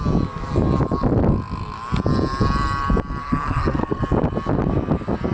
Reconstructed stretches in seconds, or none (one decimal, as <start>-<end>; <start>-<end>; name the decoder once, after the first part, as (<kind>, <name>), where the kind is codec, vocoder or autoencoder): 3.2-4.0 (codec, SNAC)